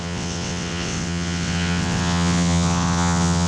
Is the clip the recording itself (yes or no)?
no